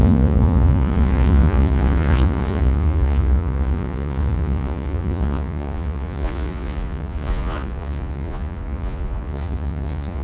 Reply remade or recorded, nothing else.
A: remade